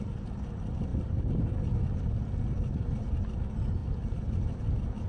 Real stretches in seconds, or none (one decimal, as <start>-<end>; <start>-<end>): 0.0-0.9; 2.1-3.8; 4.5-5.1